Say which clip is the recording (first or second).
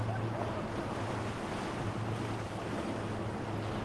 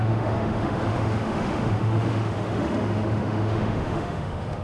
first